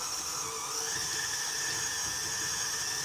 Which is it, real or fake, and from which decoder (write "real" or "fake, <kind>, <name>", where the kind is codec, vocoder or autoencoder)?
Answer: real